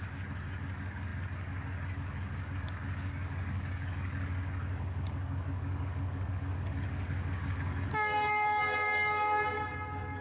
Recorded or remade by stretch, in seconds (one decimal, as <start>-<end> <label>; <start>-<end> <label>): 0.0-10.2 remade